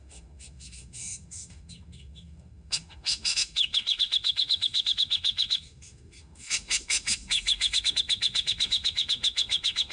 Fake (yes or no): yes